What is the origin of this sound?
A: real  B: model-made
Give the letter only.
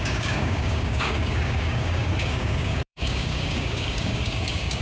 B